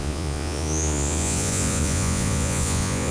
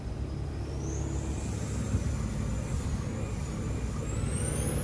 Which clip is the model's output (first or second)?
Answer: first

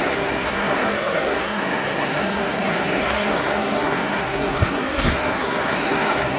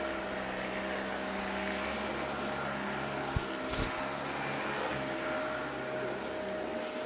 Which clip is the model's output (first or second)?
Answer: first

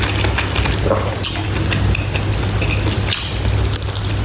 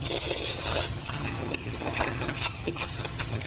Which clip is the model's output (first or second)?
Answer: second